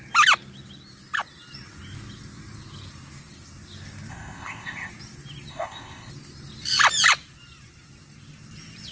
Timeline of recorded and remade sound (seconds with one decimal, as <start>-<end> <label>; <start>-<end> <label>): 0.0-4.1 recorded; 4.1-4.9 remade; 4.9-5.5 recorded; 5.5-6.1 remade; 6.1-8.9 recorded

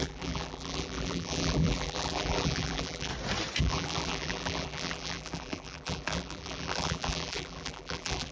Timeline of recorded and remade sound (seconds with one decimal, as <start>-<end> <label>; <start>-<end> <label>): 0.0-3.1 remade; 3.1-3.6 recorded; 3.6-8.3 remade

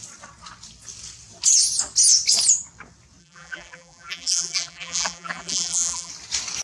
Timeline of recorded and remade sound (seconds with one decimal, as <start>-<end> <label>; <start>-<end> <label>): 0.0-3.2 recorded; 3.2-6.1 remade; 6.1-6.6 recorded